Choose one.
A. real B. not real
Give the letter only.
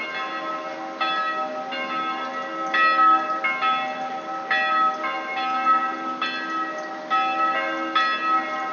A